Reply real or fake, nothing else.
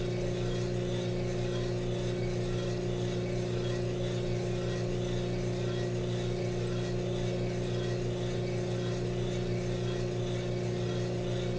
real